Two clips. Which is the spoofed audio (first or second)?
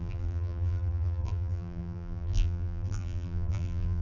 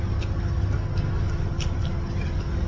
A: first